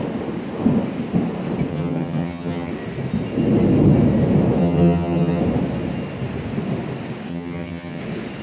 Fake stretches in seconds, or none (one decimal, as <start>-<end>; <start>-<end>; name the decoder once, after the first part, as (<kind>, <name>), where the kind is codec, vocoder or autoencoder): 1.7-2.7 (vocoder, HiFi-GAN); 4.6-5.4; 7.3-8.0